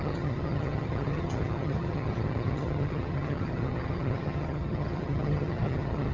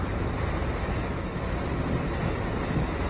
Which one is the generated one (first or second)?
first